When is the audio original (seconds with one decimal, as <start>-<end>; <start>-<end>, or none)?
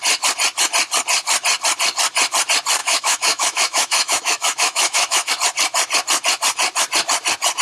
0.0-2.8; 5.3-7.6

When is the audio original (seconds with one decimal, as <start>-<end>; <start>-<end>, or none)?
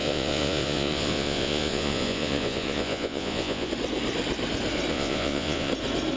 3.7-4.9; 5.7-6.2